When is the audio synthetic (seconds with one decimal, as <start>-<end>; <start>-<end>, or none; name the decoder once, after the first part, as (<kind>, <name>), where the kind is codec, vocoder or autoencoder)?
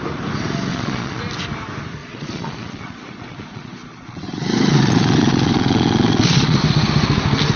0.7-1.2 (vocoder, Vocos); 2.0-6.6